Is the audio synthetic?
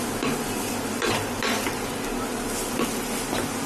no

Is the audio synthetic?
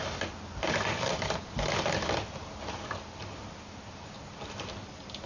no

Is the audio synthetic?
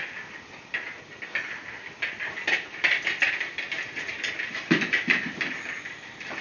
no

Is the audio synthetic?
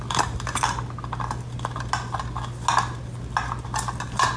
no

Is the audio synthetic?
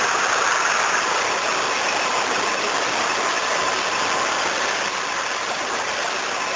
no